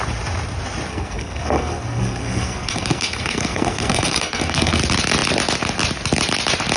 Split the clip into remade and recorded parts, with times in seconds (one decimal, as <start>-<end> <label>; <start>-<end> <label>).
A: 0.0-0.9 recorded; 0.9-4.8 remade; 4.8-6.8 recorded

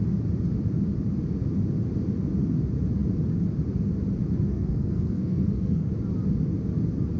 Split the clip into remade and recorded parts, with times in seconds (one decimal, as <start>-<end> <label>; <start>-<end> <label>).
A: 0.0-4.5 recorded; 4.5-5.9 remade; 5.9-7.2 recorded

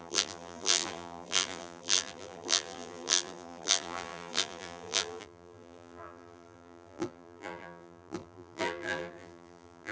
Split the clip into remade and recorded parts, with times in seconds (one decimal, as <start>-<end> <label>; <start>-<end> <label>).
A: 0.0-9.9 remade

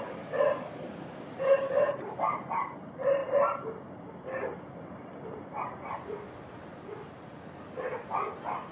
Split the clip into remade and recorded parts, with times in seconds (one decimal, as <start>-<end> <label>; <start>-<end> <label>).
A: 0.0-8.7 recorded

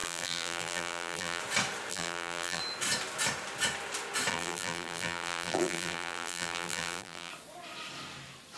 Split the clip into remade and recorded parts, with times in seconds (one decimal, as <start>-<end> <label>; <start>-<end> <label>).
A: 0.0-1.4 remade; 1.4-1.9 recorded; 1.9-2.6 remade; 2.6-4.3 recorded; 4.3-7.3 remade; 7.3-8.6 recorded

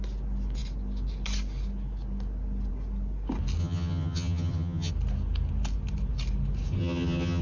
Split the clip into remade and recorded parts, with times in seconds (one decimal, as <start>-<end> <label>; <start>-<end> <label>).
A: 0.0-3.6 recorded; 3.6-4.9 remade; 4.9-6.8 recorded; 6.8-7.4 remade